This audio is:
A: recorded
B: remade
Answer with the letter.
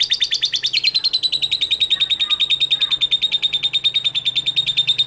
A